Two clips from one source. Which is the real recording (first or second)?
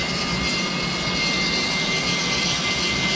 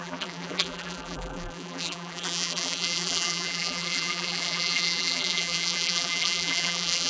first